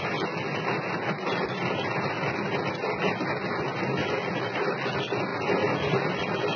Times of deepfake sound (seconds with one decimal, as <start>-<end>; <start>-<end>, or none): none